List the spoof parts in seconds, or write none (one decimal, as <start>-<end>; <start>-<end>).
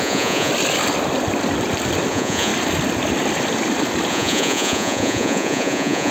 0.0-0.5; 2.1-2.5; 4.1-6.1